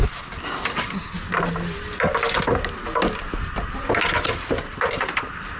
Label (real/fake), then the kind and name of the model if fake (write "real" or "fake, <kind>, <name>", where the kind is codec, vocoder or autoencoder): real